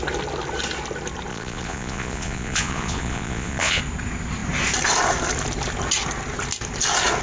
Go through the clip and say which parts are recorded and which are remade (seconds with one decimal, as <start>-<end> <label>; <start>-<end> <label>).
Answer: 0.0-1.3 recorded; 1.3-3.8 remade; 3.8-7.2 recorded